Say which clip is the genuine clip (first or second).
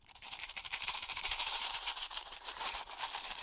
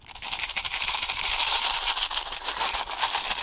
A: second